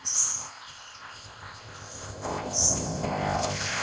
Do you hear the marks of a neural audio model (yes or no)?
yes